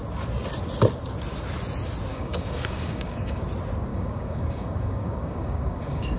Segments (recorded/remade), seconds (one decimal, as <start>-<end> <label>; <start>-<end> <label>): 0.0-2.1 recorded; 2.1-3.4 remade; 3.4-3.9 recorded; 3.9-6.2 remade